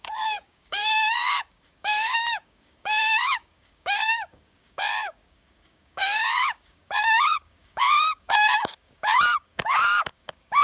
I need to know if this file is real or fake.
fake